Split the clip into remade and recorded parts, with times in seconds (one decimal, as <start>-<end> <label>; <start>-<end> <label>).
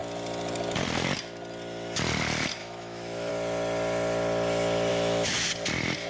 0.0-2.6 recorded; 2.6-3.3 remade; 3.3-4.9 recorded; 4.9-5.5 remade; 5.5-6.1 recorded